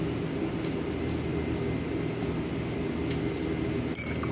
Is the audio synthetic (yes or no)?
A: no